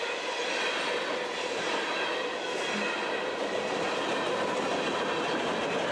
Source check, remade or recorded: recorded